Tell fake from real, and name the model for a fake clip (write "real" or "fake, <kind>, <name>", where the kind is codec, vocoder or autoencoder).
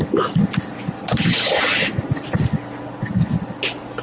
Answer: real